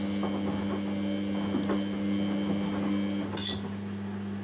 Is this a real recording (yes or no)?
yes